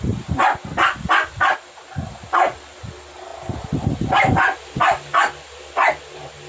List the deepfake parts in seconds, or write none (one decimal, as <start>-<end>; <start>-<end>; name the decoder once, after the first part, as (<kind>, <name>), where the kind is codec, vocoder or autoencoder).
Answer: none